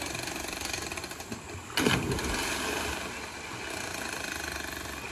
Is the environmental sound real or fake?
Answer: real